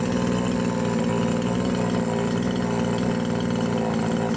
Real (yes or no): yes